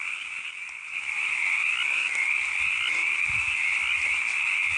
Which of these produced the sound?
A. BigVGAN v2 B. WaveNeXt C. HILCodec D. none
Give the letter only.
D